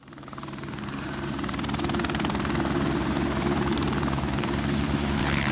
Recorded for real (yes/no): no